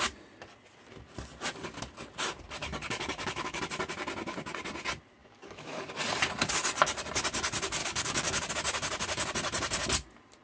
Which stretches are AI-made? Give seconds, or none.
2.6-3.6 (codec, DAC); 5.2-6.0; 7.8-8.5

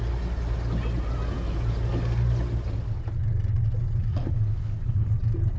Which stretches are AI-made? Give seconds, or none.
4.1-5.1 (codec, HILCodec)